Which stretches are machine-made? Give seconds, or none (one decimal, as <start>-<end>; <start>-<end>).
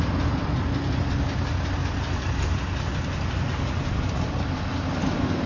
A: none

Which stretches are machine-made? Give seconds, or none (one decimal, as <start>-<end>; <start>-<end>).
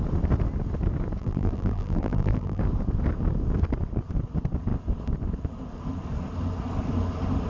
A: 1.2-2.6